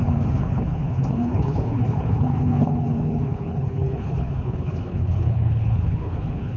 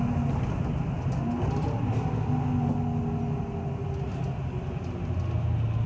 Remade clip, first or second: first